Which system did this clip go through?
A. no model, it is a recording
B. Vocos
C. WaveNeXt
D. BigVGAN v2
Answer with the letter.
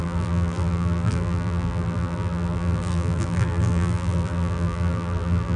D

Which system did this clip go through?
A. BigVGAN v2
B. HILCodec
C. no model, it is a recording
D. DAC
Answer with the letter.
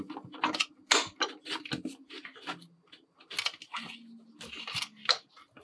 C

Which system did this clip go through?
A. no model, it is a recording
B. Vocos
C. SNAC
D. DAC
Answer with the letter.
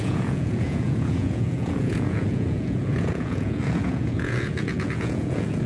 B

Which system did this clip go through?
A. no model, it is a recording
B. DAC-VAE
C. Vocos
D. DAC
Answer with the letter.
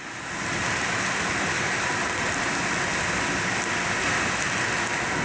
A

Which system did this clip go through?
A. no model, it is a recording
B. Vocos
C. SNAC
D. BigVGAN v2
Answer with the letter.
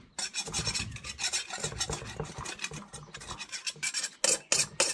A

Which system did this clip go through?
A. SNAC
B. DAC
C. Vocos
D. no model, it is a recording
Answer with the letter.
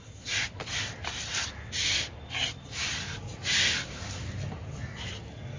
D